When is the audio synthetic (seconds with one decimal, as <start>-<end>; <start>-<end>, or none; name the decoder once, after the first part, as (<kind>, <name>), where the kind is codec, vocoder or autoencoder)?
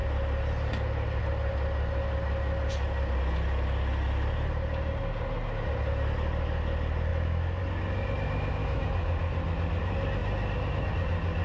7.1-7.6 (autoencoder, DAC-VAE); 8.6-9.2